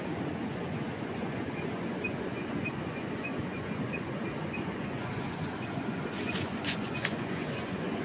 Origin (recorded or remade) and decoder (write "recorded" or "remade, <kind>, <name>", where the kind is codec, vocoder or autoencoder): remade, vocoder, Vocos